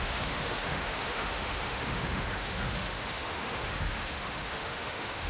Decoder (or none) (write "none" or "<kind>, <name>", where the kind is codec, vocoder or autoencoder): autoencoder, DAC-VAE